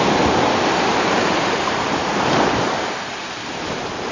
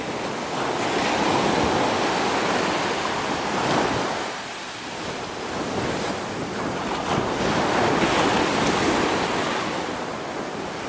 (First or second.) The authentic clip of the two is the second